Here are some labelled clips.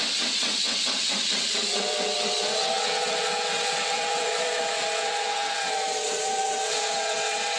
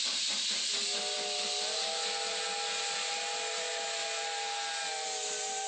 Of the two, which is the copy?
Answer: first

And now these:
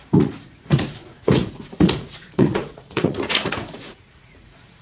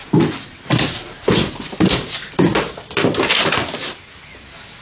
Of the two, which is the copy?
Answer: first